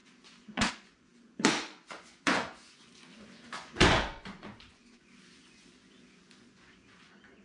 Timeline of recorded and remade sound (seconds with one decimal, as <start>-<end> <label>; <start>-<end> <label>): 0.0-7.4 remade